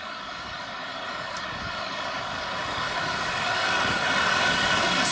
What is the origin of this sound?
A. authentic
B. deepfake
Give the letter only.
B